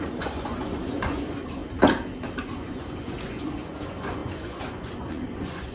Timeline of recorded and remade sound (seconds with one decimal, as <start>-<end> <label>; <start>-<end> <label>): 0.0-1.6 remade; 1.6-2.4 recorded; 2.4-5.7 remade